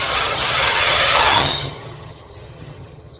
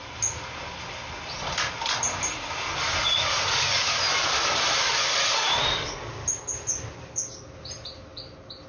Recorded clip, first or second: second